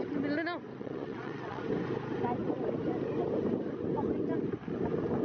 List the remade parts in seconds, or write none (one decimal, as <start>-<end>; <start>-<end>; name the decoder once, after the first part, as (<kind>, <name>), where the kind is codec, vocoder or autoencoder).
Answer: 0.7-1.6 (vocoder, WaveNeXt)